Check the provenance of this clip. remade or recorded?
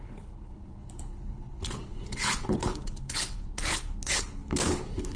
remade